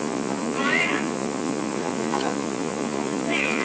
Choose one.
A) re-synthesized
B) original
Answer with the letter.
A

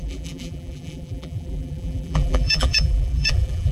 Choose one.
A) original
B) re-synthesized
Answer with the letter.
B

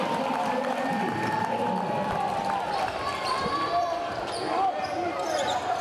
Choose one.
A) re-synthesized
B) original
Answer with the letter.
A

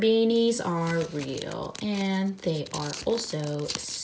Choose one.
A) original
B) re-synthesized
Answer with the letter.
A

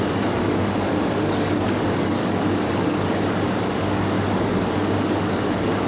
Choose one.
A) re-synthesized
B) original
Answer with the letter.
A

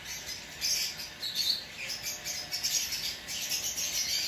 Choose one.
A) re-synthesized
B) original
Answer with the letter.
B